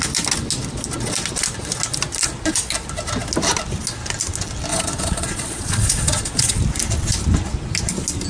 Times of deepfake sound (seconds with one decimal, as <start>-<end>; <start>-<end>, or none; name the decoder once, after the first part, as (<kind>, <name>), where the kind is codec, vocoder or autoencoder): 4.7-6.6 (vocoder, Vocos)